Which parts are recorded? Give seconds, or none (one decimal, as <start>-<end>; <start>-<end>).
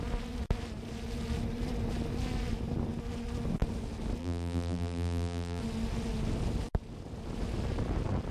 0.0-4.2; 5.6-8.3